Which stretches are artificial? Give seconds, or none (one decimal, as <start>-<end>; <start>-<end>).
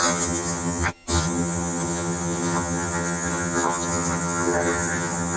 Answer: 0.0-5.4